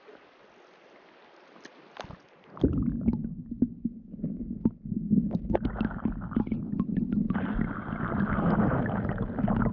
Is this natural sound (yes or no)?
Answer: yes